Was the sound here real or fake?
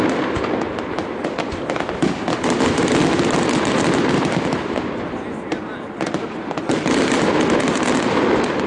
real